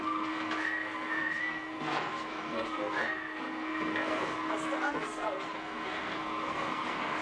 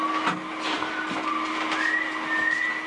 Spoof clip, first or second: first